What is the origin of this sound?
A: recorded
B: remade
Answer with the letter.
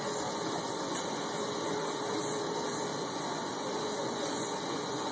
B